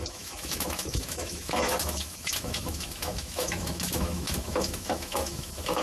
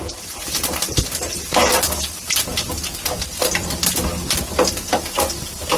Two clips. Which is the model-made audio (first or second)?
first